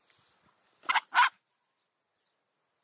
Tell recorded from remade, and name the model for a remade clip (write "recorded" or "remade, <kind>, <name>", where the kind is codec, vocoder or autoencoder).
recorded